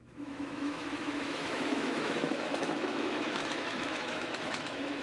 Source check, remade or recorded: remade